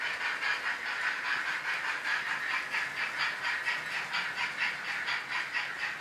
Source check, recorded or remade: recorded